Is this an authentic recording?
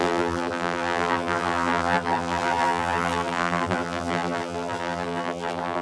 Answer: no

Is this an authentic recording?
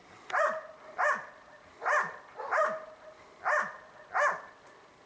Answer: yes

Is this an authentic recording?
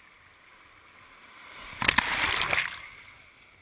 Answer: yes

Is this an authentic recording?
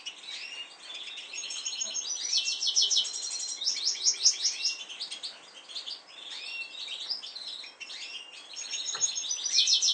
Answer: yes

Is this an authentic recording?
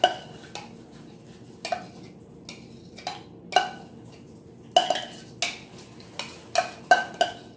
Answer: yes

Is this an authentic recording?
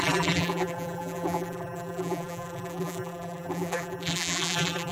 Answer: no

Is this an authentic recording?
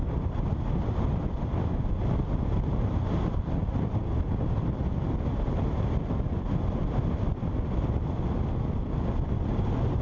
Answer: yes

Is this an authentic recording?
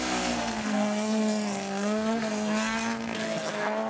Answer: no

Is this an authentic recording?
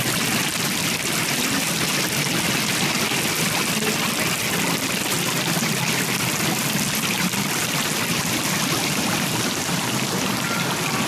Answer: yes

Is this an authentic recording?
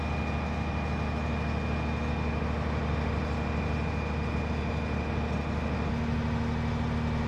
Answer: yes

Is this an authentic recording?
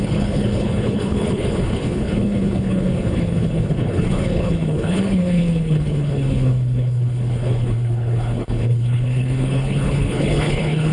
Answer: no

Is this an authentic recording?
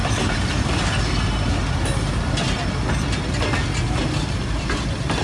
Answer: yes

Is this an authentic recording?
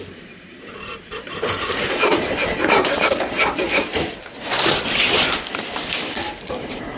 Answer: no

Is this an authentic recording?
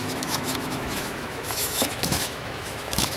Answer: no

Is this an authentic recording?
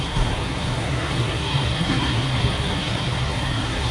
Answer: no